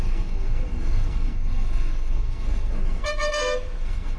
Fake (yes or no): yes